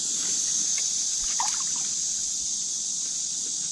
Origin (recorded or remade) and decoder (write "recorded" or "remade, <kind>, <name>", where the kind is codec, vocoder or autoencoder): recorded